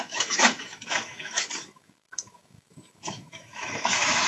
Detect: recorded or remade remade